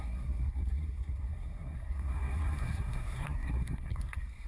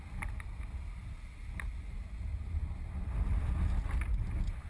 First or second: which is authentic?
second